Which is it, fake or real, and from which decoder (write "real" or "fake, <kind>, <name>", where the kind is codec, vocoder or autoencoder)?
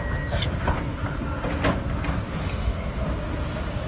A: fake, vocoder, BigVGAN v2